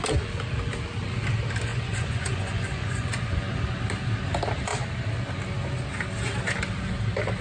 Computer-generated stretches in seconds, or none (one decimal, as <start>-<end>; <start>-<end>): 1.7-3.3